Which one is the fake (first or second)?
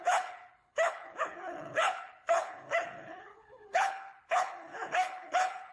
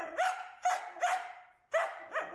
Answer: first